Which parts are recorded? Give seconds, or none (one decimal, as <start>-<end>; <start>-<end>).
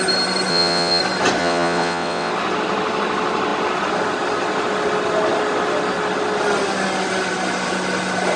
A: 0.0-0.5; 1.0-1.4; 2.3-8.4